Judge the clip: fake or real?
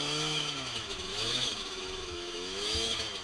fake